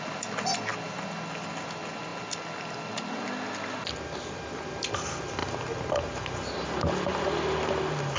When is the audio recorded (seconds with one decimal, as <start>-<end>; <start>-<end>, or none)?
0.0-8.2